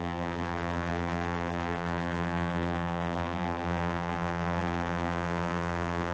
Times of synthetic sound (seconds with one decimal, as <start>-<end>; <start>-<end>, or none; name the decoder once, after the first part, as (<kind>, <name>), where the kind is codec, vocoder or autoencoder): 0.0-6.1 (vocoder, BigVGAN v2)